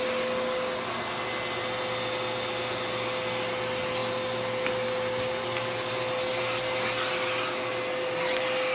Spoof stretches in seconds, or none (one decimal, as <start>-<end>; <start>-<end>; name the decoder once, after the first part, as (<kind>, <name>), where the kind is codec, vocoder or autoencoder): none